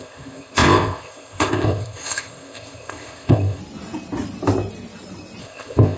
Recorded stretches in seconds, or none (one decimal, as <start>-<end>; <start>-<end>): 3.6-5.4